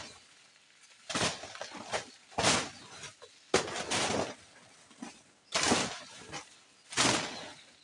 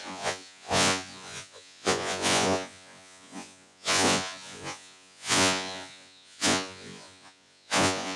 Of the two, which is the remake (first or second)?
second